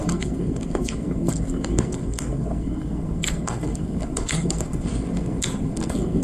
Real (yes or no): no